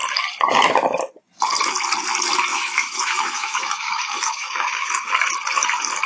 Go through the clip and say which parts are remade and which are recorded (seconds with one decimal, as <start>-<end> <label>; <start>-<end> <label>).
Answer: 0.0-2.5 recorded; 2.5-5.1 remade; 5.1-6.1 recorded